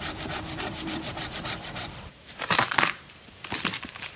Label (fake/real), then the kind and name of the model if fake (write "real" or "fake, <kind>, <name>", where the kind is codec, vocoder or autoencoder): fake, vocoder, BigVGAN v2